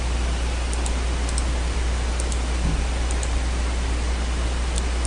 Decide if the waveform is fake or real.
real